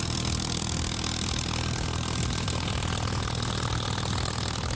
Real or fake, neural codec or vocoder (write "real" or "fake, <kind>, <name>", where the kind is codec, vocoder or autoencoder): real